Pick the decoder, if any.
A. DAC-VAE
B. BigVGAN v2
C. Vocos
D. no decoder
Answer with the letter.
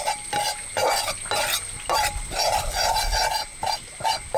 D